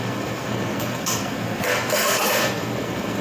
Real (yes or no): no